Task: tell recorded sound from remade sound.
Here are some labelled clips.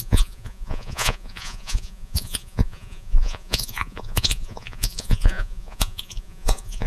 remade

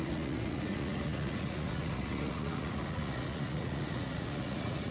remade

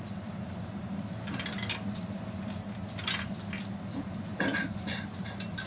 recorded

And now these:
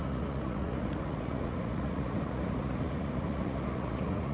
remade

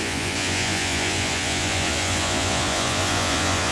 remade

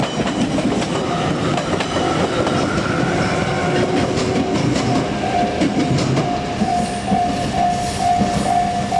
recorded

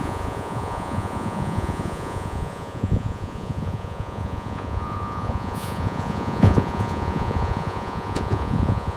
remade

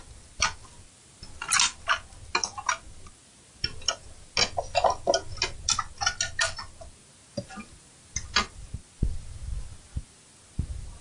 recorded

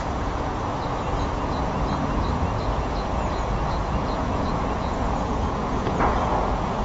remade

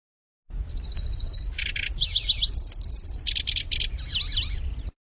recorded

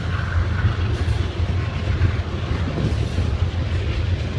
recorded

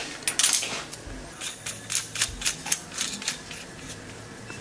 recorded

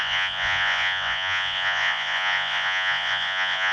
remade